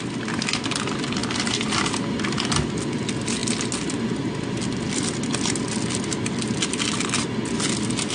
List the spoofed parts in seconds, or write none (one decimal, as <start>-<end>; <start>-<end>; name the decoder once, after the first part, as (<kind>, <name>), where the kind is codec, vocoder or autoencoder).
none